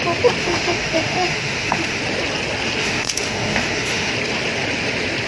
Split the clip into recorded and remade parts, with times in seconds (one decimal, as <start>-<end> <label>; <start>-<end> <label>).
0.0-0.4 recorded; 0.4-2.0 remade; 2.0-2.8 recorded; 2.8-4.1 remade; 4.1-5.3 recorded

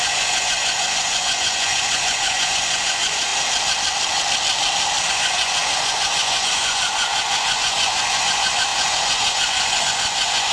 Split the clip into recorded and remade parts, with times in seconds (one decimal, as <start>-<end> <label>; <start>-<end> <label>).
0.0-3.3 remade; 3.3-5.1 recorded; 5.1-10.5 remade

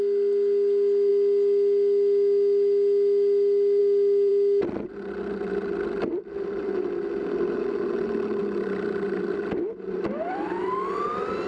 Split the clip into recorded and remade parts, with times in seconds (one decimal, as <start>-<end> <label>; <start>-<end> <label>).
0.0-11.5 recorded

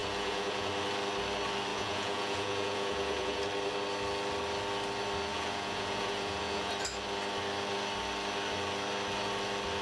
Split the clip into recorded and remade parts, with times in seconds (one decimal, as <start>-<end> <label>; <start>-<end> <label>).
0.0-0.7 remade; 0.7-1.7 recorded; 1.7-3.4 remade; 3.4-5.3 recorded; 5.3-6.7 remade; 6.7-9.8 recorded

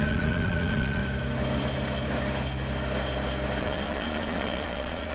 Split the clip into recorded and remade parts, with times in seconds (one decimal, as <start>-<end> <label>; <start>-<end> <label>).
0.0-1.0 remade; 1.0-3.6 recorded; 3.6-5.1 remade

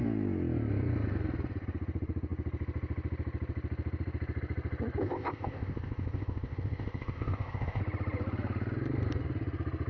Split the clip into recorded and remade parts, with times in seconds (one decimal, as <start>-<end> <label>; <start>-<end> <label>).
0.0-5.0 recorded; 5.0-7.8 remade; 7.8-9.9 recorded